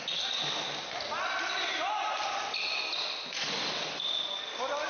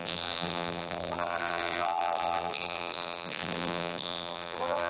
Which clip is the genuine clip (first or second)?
first